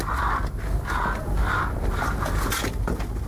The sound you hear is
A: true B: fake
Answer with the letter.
A